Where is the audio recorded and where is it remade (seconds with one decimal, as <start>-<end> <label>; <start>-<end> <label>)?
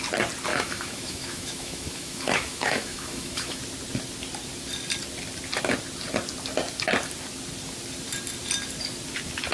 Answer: 0.0-0.5 recorded; 0.5-3.6 remade; 3.6-9.5 recorded